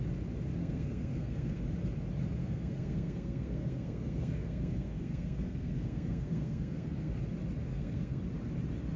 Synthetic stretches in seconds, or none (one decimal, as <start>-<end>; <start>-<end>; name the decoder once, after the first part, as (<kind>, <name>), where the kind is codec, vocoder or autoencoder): 0.6-1.6 (codec, SNAC); 2.4-7.1; 7.7-8.2

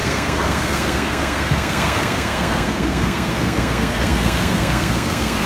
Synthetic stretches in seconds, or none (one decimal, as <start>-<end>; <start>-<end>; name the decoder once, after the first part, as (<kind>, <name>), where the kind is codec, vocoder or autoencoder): 0.0-5.5 (codec, SNAC)